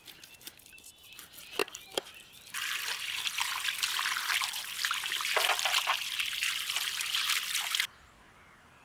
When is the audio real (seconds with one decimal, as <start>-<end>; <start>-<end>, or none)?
0.0-1.6; 4.3-8.8